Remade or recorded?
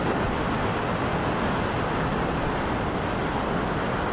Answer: recorded